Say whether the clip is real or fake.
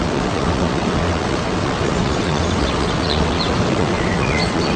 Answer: fake